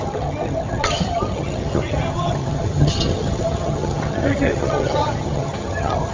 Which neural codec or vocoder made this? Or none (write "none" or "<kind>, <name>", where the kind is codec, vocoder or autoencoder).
vocoder, HiFi-GAN